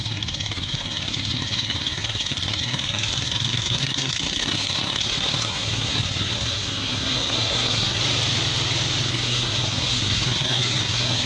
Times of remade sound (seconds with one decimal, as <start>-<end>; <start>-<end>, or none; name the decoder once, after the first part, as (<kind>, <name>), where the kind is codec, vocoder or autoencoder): 0.0-8.0 (codec, SNAC); 9.1-11.3